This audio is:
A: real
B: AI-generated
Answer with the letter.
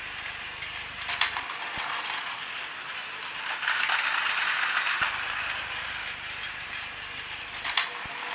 A